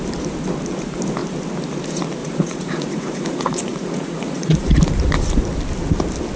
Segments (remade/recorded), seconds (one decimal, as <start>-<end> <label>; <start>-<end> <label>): 0.0-2.2 recorded; 2.2-4.8 remade; 4.8-6.4 recorded